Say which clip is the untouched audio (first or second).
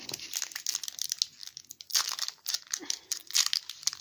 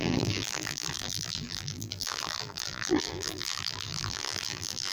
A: first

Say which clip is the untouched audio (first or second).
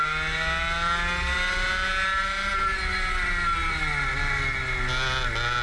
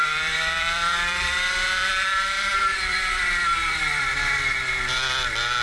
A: first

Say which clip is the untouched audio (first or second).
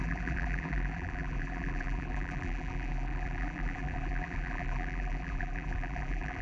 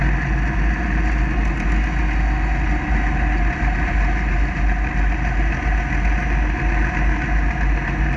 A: second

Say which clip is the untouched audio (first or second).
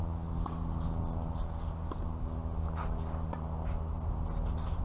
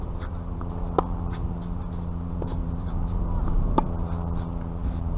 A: first